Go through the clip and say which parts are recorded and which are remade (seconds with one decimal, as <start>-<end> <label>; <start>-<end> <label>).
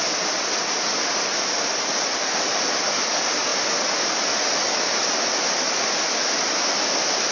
0.0-7.3 recorded